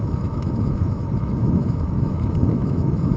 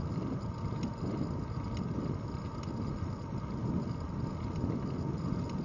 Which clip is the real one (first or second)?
second